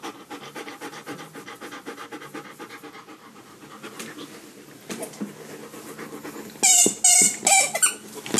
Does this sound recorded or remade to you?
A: recorded